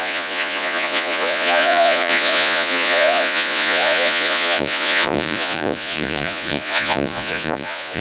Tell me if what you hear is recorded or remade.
remade